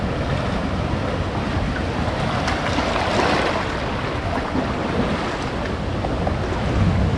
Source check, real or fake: real